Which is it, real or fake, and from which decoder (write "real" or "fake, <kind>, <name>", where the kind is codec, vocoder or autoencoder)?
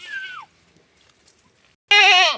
real